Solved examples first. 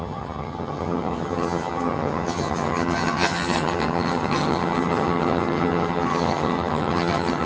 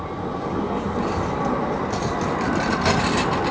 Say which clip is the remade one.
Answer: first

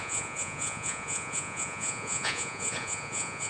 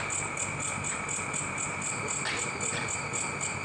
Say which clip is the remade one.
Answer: first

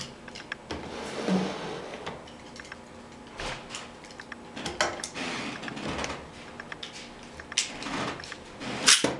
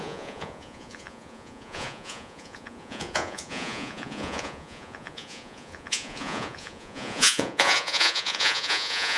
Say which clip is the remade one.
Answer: second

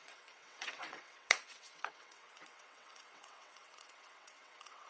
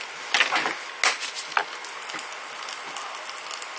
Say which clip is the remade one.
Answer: first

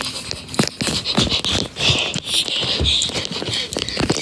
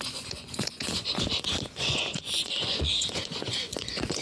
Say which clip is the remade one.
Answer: second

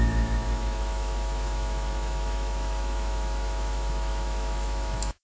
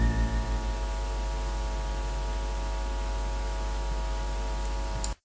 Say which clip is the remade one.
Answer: first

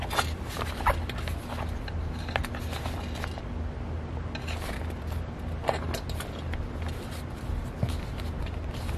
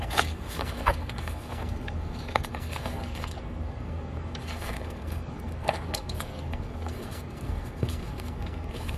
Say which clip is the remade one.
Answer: second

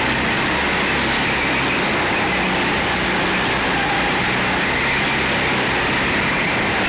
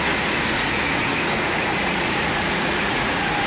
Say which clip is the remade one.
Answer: second